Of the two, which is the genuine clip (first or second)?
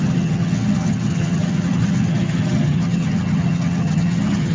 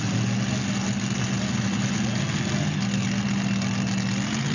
second